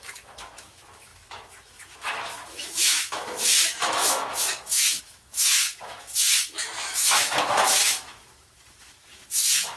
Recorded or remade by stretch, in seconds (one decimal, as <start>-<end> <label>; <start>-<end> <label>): 0.0-9.8 remade